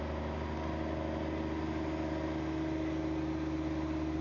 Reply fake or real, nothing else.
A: real